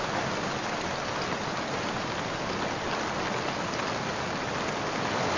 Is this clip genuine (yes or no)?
yes